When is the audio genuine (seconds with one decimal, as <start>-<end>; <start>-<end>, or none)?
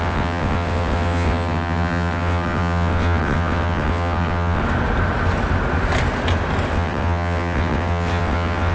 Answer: 4.6-6.7